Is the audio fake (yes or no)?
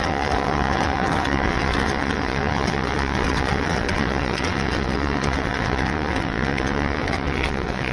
yes